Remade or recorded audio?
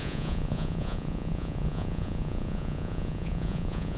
remade